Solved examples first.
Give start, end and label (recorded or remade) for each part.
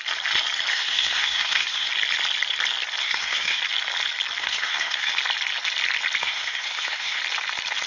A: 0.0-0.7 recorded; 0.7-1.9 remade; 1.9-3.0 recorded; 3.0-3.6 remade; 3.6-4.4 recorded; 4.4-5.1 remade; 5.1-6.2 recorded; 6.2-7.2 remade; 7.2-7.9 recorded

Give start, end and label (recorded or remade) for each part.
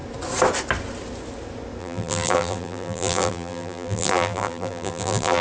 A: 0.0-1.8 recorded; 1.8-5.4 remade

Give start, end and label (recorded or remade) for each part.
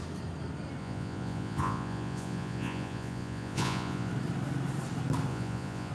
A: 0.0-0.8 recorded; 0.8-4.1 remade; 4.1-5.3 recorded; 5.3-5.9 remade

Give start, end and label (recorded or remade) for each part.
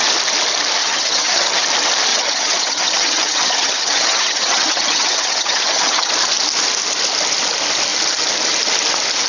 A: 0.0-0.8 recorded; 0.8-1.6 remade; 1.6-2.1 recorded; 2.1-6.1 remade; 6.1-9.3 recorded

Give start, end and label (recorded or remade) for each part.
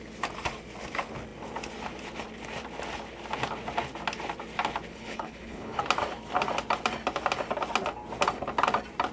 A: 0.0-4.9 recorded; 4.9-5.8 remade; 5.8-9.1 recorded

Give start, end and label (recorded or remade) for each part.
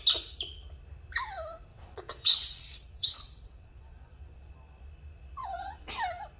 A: 0.0-1.7 recorded; 1.7-4.5 remade; 4.5-5.4 recorded; 5.4-5.9 remade; 5.9-6.4 recorded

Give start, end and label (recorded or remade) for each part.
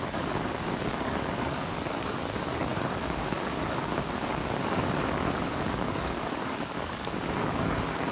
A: 0.0-8.1 remade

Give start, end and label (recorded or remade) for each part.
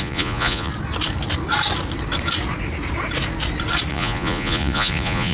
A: 0.0-0.7 remade; 0.7-3.9 recorded; 3.9-5.3 remade